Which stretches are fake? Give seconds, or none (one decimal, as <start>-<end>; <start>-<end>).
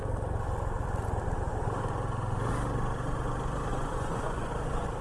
3.7-4.5